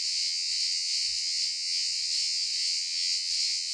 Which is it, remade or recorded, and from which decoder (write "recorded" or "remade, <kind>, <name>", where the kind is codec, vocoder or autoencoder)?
remade, vocoder, WaveNeXt